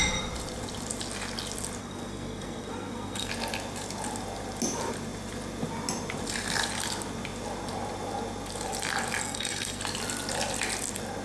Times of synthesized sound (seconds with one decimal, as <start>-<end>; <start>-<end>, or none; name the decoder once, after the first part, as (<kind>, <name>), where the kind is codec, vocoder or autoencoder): 1.8-3.3 (codec, SNAC); 9.2-9.8

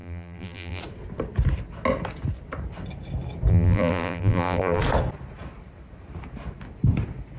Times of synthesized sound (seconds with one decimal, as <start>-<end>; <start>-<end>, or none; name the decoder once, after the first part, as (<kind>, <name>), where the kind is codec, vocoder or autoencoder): 0.0-0.8 (vocoder, BigVGAN v2); 3.5-4.8

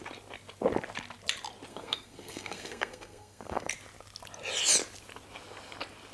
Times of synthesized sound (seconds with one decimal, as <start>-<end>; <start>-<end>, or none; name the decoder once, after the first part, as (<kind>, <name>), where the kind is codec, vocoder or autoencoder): 1.7-3.7 (codec, SNAC)

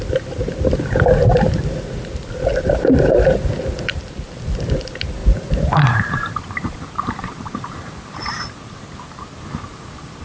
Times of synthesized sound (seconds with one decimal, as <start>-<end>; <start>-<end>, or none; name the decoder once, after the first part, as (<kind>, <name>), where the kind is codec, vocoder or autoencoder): 2.5-4.0 (vocoder, BigVGAN v2); 5.2-8.3

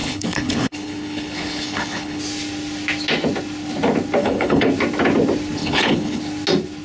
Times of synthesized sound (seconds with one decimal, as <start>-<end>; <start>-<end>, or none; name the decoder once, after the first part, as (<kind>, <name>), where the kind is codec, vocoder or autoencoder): 0.0-2.2 (codec, HILCodec); 4.2-4.7; 5.6-6.2

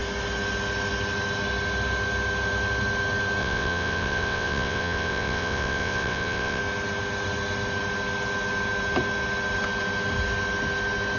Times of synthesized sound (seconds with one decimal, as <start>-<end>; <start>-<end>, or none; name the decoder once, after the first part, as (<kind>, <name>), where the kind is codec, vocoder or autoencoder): 3.4-6.6 (vocoder, WaveNeXt)